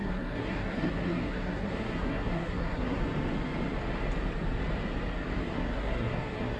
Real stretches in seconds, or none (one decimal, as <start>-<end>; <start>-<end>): 3.0-5.4